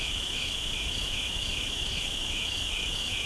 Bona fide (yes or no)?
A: no